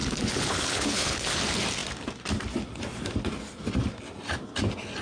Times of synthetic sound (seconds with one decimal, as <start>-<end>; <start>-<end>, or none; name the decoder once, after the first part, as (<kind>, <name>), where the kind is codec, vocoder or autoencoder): 0.0-1.4 (codec, HILCodec)